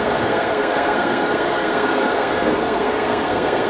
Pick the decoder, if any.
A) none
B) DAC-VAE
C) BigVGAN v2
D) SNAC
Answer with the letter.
D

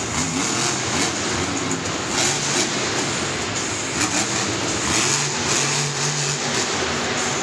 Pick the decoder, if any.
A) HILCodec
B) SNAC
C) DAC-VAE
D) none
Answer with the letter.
D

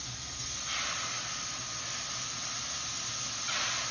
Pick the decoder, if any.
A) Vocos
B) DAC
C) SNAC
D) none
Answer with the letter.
D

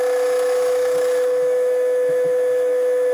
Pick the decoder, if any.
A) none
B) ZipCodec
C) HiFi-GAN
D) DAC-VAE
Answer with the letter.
D